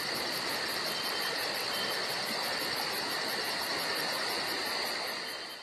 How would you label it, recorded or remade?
recorded